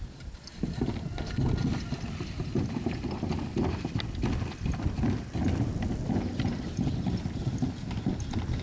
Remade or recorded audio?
recorded